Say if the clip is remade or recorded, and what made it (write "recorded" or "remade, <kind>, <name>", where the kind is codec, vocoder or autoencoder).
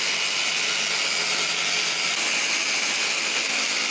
recorded